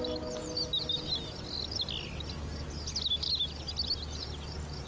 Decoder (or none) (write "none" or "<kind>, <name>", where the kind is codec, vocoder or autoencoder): none